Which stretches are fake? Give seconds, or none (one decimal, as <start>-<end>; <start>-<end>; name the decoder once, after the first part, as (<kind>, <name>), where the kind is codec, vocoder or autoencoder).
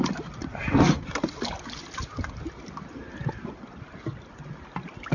none